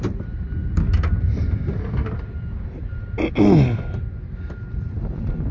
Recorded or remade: recorded